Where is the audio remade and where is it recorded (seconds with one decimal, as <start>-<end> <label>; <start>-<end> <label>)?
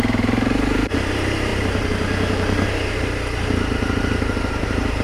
0.0-5.0 remade